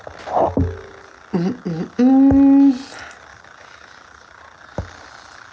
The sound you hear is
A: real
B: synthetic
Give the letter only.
A